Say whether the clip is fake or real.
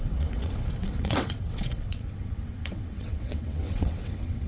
fake